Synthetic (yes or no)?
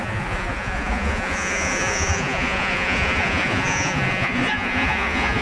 yes